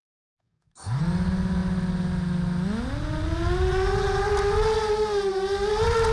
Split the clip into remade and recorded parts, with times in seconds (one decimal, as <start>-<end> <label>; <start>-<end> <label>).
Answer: 0.0-1.0 remade; 1.0-6.1 recorded